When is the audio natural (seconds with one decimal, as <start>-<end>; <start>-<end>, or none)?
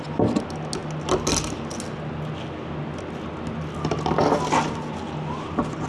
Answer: 0.0-5.9